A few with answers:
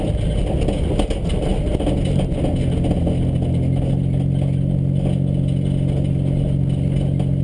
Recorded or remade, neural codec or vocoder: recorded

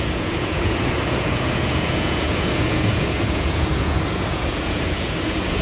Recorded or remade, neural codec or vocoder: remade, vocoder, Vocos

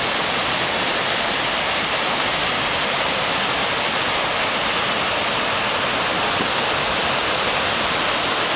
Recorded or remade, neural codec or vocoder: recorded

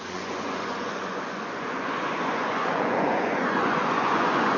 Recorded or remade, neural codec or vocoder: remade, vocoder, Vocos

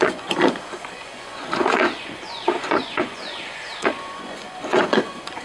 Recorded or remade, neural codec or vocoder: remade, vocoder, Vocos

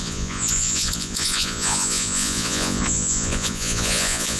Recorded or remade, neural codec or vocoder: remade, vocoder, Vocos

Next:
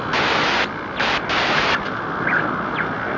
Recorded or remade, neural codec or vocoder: recorded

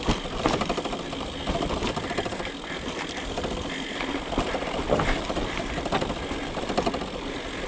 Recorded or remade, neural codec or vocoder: recorded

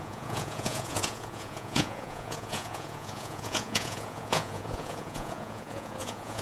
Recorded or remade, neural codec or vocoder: remade, vocoder, Vocos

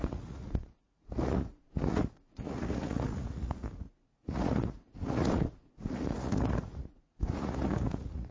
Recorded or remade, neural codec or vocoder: remade, vocoder, Vocos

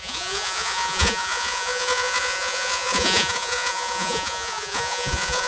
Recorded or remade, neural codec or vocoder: remade, vocoder, Vocos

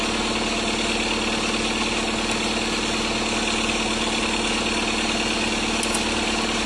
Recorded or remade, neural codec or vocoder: recorded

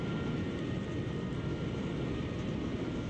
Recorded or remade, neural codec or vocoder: recorded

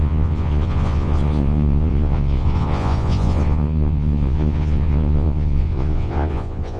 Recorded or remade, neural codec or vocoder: remade, vocoder, Vocos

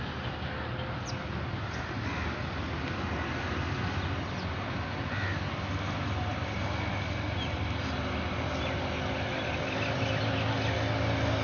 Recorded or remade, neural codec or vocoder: recorded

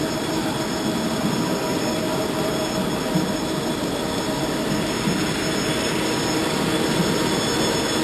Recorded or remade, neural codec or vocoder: recorded